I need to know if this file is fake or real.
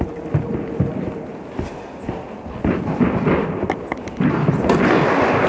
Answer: real